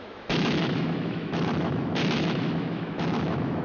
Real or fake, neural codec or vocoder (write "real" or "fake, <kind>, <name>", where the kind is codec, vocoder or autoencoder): fake, autoencoder, DAC-VAE